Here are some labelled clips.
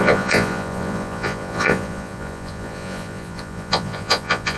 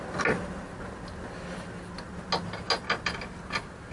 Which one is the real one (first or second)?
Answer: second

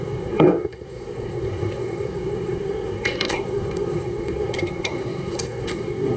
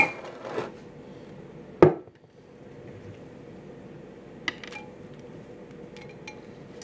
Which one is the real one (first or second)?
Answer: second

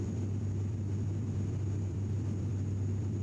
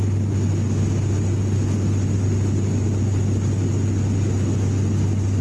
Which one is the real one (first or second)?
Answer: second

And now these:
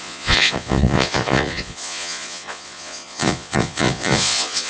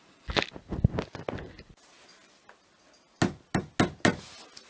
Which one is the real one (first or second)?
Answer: second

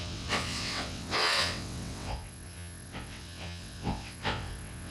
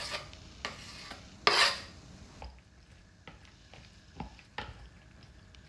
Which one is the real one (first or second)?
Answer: second